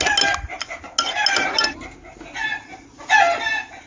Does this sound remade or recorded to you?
recorded